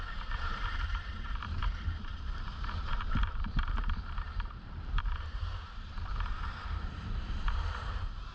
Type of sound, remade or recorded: remade